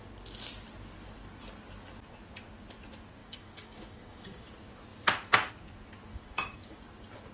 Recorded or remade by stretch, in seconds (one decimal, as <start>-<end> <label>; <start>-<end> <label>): 0.0-3.2 recorded; 3.2-4.5 remade; 4.5-6.1 recorded; 6.1-6.8 remade; 6.8-7.3 recorded